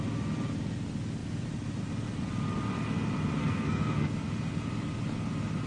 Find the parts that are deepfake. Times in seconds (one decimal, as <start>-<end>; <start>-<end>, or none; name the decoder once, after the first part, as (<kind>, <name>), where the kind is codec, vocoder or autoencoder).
3.4-4.1 (codec, SNAC)